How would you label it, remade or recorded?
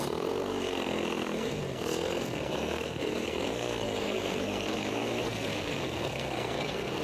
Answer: remade